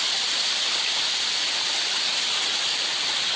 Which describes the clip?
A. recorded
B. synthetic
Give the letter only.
A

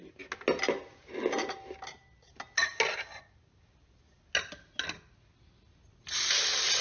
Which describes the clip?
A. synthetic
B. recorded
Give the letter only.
B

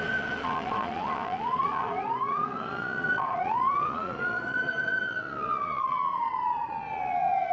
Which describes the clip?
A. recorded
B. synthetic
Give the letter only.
B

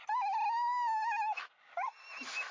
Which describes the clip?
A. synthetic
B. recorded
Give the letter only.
B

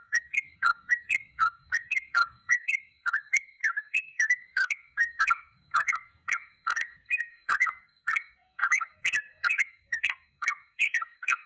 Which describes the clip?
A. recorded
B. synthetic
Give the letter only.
B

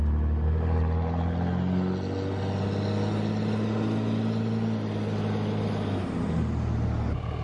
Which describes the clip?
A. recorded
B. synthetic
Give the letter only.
A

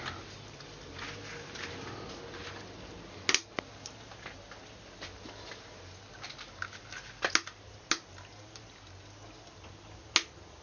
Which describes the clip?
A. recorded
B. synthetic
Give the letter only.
A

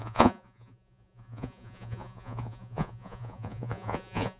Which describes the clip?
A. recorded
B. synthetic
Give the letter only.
B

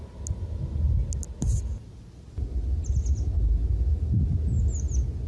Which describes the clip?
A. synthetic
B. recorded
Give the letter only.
B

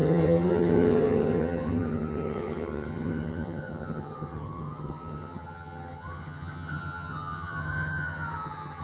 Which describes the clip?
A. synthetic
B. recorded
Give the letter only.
A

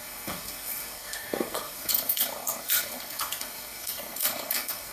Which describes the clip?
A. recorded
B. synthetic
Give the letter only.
B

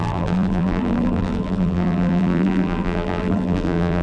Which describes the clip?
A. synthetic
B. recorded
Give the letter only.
A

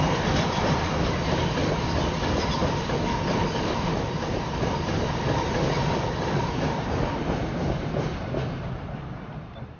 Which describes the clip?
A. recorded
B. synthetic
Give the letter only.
B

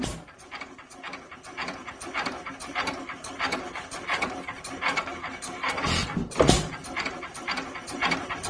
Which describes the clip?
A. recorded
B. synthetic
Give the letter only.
B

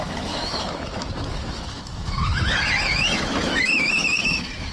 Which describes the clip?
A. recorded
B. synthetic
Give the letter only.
B